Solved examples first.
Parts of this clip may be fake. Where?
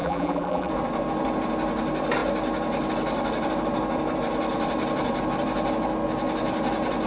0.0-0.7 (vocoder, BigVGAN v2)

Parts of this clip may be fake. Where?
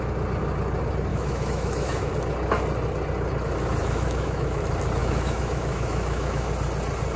1.1-2.1 (autoencoder, DAC-VAE); 3.8-4.6; 5.0-6.5